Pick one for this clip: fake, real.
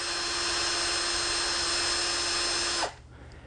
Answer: real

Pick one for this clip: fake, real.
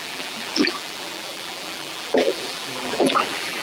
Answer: fake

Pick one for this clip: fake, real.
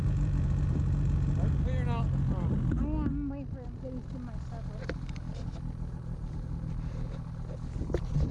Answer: real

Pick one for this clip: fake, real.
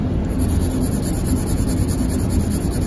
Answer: real